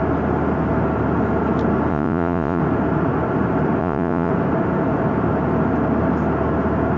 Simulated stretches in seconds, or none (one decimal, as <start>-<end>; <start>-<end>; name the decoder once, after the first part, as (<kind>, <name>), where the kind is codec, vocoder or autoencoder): 1.9-2.6 (vocoder, Vocos); 3.8-4.3